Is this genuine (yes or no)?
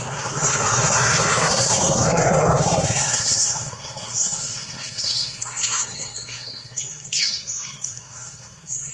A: no